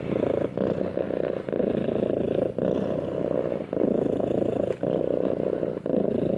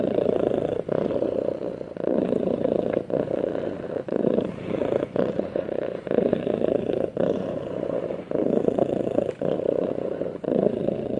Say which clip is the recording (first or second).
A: first